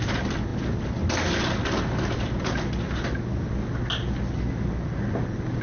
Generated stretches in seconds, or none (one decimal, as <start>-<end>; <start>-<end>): none